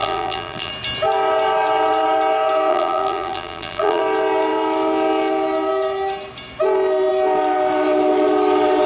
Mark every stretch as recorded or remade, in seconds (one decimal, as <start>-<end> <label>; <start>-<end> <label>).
0.0-0.7 remade; 0.7-2.7 recorded; 2.7-4.0 remade; 4.0-8.9 recorded

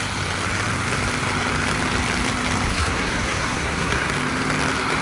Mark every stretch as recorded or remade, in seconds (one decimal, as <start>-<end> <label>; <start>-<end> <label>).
0.0-2.7 recorded; 2.7-4.1 remade; 4.1-5.0 recorded